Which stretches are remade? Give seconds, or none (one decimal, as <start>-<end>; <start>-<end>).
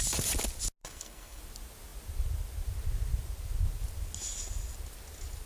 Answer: 0.8-1.4